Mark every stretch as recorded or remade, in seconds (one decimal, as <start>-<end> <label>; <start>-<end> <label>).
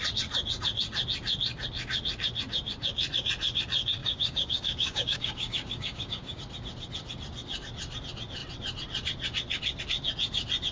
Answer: 0.0-4.0 recorded; 4.0-6.4 remade; 6.4-10.7 recorded